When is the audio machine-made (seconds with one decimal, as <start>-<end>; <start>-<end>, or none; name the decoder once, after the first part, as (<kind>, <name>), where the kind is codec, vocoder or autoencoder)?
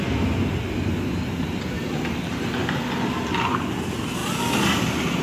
none